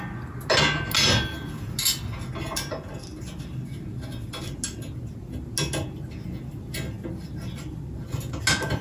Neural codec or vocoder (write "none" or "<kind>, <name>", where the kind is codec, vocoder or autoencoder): none